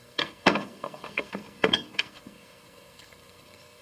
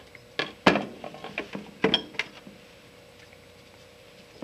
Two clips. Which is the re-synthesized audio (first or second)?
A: first